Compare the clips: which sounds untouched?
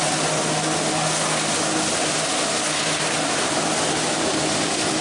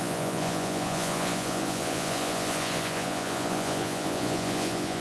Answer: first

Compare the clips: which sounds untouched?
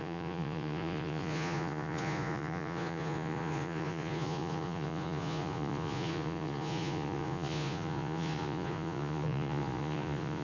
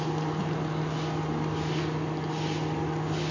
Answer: second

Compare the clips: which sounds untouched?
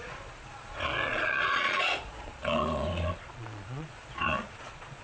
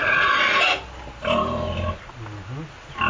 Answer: second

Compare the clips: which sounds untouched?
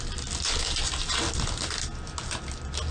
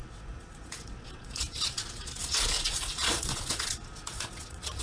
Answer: first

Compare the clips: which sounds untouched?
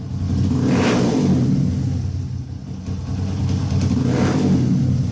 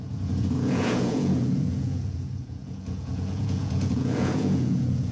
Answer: first